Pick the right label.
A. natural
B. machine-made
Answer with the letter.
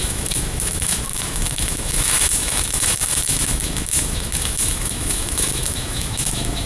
B